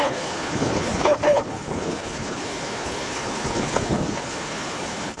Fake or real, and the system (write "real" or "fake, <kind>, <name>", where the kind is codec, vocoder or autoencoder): fake, codec, HILCodec